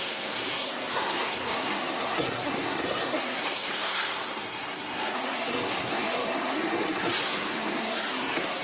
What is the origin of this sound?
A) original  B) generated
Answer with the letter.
B